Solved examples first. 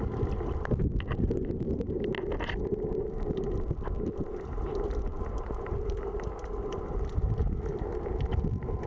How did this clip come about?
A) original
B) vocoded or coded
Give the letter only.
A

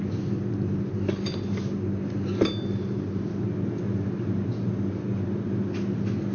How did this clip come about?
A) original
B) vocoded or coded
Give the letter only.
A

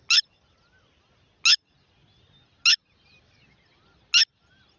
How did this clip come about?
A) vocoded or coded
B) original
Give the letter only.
B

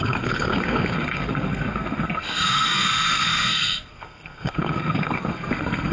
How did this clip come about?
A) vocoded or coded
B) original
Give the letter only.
A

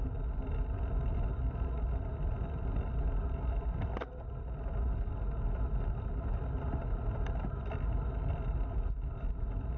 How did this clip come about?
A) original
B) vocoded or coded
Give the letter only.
A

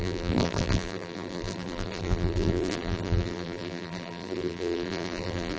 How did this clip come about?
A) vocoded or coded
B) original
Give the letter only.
A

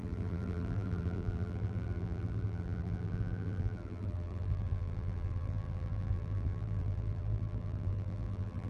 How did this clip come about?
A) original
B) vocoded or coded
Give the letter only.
B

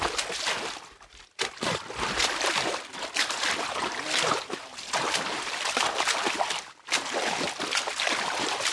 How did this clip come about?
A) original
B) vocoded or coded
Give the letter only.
B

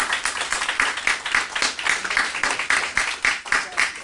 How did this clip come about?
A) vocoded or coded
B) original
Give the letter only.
A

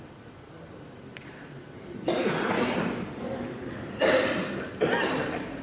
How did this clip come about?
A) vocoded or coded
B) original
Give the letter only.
A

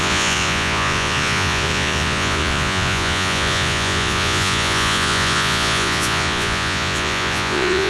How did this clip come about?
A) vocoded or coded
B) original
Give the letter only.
A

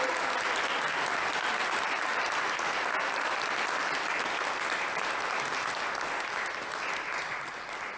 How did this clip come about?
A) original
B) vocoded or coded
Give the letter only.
A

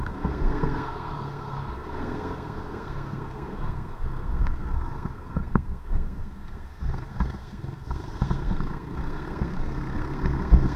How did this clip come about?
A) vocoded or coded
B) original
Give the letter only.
A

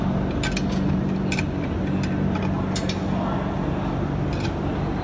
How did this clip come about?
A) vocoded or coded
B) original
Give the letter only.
B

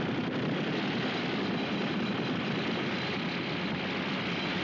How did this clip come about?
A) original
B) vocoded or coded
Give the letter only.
A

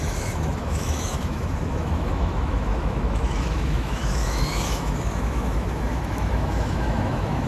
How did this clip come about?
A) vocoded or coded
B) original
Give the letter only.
A